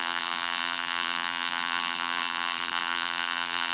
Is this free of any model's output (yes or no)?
no